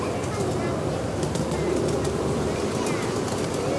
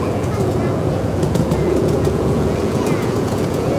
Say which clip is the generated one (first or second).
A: second